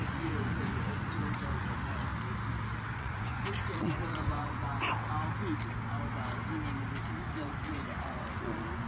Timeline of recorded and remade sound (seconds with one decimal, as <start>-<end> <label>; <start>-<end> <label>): 0.0-2.1 remade; 2.1-3.0 recorded; 3.0-4.7 remade; 4.7-7.7 recorded; 7.7-8.9 remade